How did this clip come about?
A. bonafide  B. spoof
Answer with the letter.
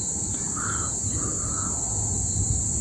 A